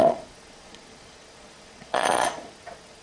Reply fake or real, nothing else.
fake